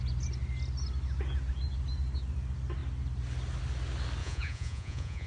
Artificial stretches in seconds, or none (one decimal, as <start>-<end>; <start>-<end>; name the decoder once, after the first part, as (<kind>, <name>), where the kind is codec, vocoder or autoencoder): 4.2-5.3 (vocoder, Vocos)